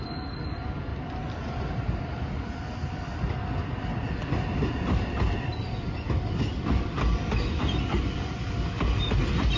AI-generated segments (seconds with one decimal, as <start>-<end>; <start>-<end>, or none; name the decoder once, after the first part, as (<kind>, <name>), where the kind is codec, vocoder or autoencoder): 0.9-2.4 (vocoder, BigVGAN v2); 2.8-4.7; 5.5-9.2